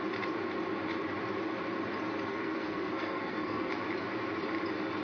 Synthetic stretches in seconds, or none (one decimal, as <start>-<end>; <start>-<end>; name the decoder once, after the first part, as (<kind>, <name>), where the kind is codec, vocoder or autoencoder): 2.3-3.7 (codec, SNAC)